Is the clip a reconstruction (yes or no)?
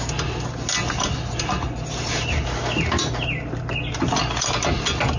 no